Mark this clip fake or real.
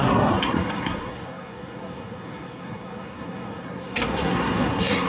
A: fake